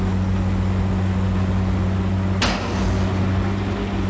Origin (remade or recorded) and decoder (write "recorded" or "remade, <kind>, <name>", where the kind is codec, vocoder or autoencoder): recorded